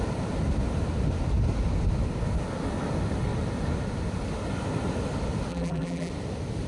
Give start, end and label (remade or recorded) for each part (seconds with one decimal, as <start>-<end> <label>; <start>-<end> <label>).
0.0-5.5 recorded; 5.5-6.1 remade; 6.1-6.7 recorded